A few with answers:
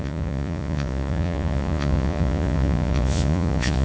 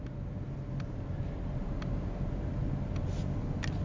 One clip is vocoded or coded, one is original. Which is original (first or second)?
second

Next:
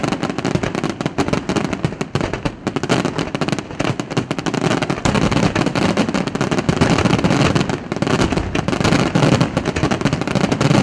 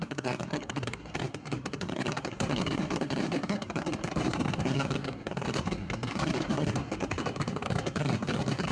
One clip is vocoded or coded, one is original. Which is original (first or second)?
first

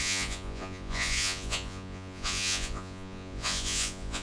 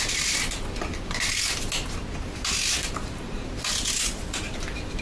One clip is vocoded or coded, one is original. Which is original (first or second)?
second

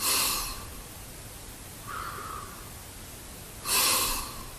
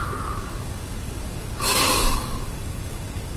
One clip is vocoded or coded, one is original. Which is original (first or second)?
first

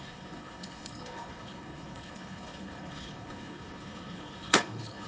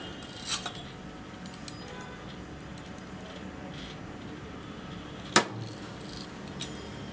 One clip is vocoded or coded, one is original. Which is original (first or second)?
second